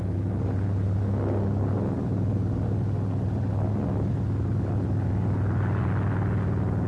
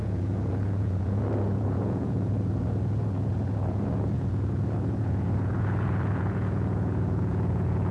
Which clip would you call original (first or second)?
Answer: first